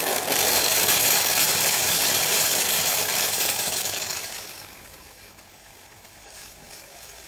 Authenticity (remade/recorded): remade